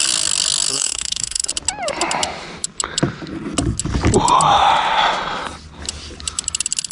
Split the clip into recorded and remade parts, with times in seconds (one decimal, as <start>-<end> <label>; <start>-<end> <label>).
0.0-0.7 recorded; 0.7-1.5 remade; 1.5-6.9 recorded